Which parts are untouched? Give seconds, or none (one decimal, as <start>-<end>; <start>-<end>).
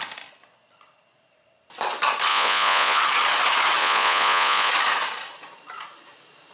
0.0-2.3; 3.0-3.8; 4.7-6.5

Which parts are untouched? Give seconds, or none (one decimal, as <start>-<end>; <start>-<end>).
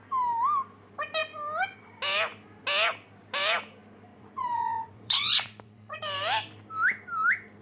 0.0-4.1; 6.0-7.6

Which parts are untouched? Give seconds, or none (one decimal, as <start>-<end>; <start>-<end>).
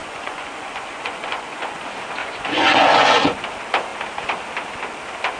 1.8-2.2; 3.4-5.4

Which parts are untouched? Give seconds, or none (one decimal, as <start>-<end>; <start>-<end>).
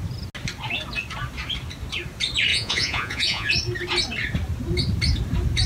0.0-2.5; 3.5-5.7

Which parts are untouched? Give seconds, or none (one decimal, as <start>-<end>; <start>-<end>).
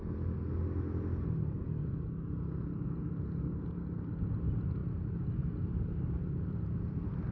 0.0-7.3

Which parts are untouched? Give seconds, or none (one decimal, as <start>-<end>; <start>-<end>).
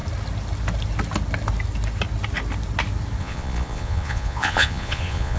0.0-3.2